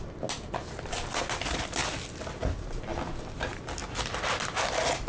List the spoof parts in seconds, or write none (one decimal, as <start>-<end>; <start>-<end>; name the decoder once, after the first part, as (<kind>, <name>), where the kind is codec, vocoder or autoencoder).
none